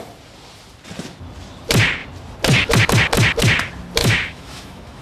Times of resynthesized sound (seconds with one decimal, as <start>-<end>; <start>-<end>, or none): 4.0-5.0